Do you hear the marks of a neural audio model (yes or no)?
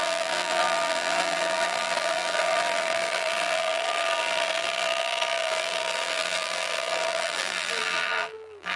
yes